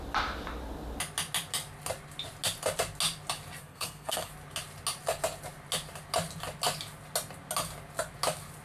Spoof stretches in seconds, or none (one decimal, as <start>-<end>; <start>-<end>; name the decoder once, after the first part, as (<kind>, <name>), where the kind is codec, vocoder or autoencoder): 3.6-4.3 (codec, SNAC)